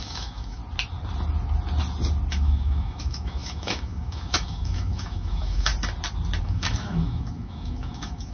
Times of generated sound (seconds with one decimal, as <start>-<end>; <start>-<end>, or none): 0.0-0.6; 2.3-5.7; 6.4-8.3

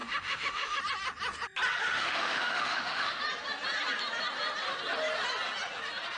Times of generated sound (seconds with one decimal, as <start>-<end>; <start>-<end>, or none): 0.0-0.8; 1.8-3.2

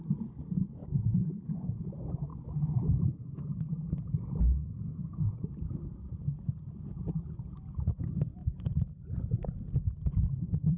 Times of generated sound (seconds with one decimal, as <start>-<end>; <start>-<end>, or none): 0.8-1.4; 2.3-3.9; 5.0-5.5

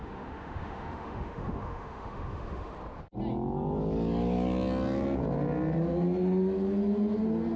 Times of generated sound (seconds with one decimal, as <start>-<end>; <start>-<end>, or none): 0.0-2.7